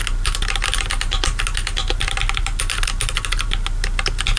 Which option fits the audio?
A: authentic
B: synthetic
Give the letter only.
A